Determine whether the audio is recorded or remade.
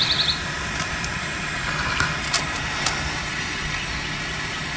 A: remade